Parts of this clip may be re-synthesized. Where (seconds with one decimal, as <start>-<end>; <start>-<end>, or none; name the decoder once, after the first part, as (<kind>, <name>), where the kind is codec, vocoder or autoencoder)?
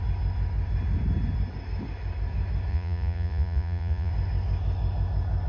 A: 2.7-4.1 (vocoder, Vocos)